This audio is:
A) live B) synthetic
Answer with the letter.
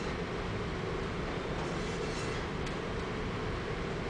A